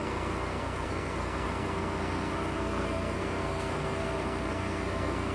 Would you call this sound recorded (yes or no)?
no